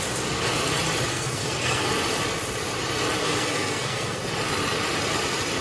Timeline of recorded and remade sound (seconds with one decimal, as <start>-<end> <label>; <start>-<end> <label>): 0.0-1.1 recorded; 1.1-1.9 remade; 1.9-3.2 recorded; 3.2-4.2 remade; 4.2-5.6 recorded